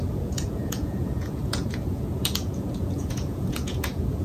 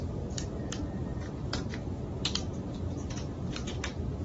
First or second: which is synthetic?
first